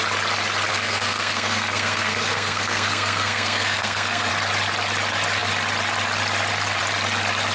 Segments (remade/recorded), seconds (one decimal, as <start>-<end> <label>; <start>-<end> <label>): 0.0-0.7 recorded; 0.7-4.3 remade; 4.3-7.5 recorded